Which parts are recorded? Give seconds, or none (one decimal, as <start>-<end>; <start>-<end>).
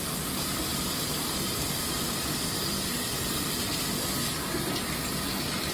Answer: 0.0-5.7